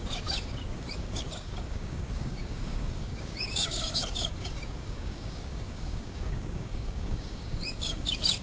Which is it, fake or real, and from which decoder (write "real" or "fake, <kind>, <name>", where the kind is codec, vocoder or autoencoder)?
fake, codec, DAC